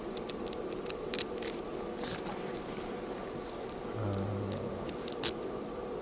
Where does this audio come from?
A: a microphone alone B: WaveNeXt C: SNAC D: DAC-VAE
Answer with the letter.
A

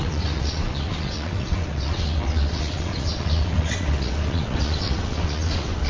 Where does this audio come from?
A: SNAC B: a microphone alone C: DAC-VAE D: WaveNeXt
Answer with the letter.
D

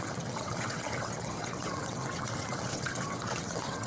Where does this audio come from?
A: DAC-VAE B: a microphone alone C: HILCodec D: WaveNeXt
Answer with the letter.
D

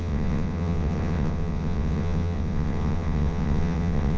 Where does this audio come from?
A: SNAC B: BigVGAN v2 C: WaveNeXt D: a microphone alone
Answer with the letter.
C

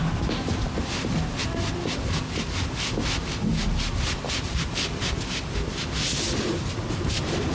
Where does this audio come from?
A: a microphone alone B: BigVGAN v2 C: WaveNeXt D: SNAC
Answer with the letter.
A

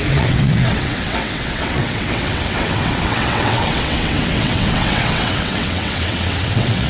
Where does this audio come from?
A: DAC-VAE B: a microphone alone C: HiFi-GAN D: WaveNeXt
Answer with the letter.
D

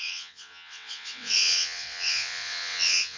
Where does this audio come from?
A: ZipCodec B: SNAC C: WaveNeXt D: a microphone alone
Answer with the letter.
C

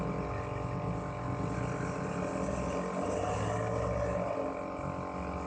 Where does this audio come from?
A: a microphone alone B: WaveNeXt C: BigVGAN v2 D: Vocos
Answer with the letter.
A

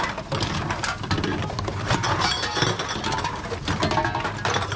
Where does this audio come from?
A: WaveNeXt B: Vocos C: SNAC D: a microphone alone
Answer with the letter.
D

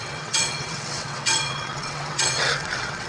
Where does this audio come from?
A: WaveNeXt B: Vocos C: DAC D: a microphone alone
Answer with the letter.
A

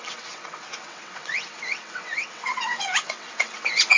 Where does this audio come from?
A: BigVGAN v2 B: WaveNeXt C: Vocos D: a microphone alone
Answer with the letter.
B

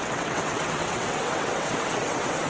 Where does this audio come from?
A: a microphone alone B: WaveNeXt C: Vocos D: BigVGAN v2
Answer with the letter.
B